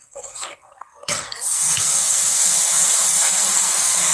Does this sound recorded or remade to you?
remade